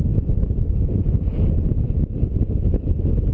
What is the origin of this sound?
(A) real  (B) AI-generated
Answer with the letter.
A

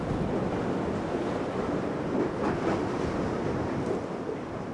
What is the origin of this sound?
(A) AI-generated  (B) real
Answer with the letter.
B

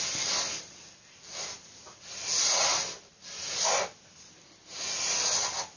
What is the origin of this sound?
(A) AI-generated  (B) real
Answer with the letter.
B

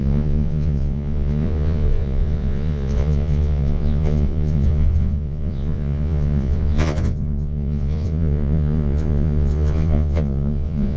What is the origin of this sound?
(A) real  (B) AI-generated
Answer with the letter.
B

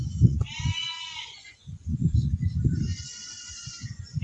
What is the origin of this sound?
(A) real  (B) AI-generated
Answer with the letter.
B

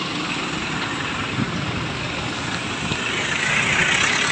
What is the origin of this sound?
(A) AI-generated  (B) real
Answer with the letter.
B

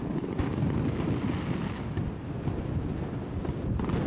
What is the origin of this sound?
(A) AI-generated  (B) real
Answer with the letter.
B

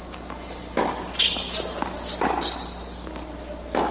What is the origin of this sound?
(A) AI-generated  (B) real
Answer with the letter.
B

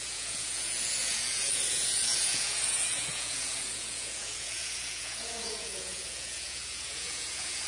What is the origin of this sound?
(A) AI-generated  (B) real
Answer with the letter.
A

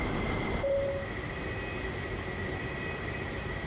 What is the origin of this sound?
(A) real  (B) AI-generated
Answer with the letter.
A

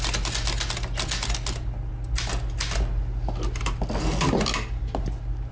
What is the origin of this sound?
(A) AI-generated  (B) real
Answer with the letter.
B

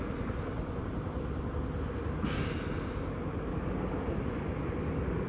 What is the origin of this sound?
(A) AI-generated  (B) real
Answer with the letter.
B